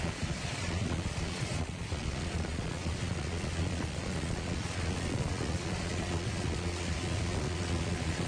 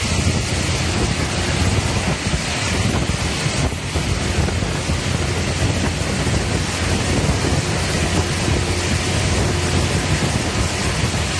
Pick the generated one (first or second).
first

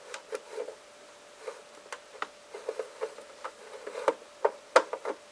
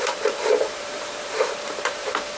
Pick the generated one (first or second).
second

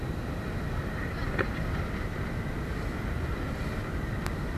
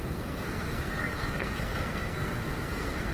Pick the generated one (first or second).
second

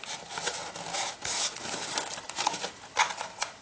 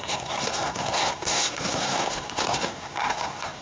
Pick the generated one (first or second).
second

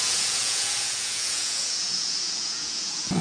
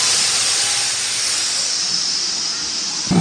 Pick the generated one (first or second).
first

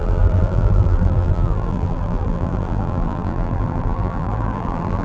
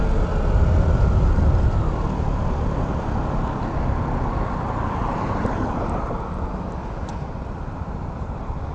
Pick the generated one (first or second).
first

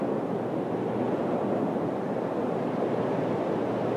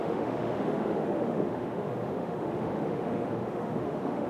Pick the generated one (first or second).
second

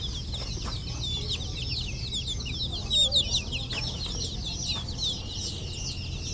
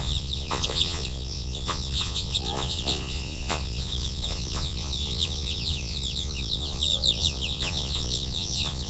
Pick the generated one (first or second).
second